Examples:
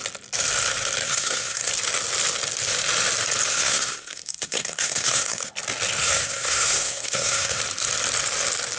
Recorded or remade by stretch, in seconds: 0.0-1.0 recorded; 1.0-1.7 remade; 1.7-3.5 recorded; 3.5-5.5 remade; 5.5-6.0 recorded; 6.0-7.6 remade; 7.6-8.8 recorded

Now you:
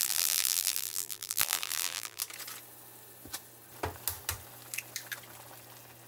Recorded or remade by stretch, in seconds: 0.0-2.2 remade; 2.2-6.1 recorded

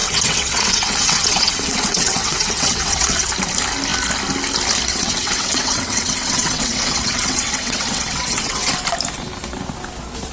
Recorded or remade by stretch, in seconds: 0.0-3.3 remade; 3.3-4.9 recorded; 4.9-8.7 remade; 8.7-10.3 recorded

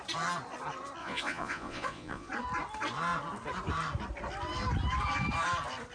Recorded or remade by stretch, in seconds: 0.0-1.0 recorded; 1.0-2.3 remade; 2.3-5.9 recorded

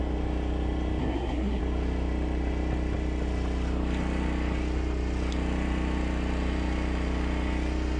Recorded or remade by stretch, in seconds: 0.0-1.0 recorded; 1.0-1.6 remade; 1.6-8.0 recorded